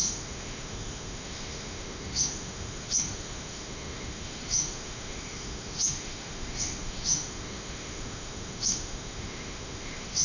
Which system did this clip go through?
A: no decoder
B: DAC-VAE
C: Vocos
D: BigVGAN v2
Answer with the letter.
B